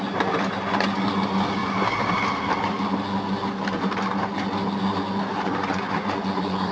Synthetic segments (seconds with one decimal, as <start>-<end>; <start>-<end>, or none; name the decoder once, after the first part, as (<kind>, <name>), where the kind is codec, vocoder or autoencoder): 5.3-6.7 (vocoder, Vocos)